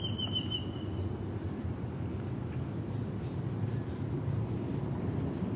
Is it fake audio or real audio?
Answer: fake